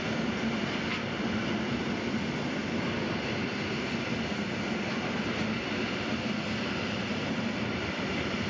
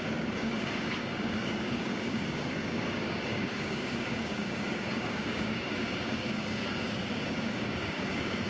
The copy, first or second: second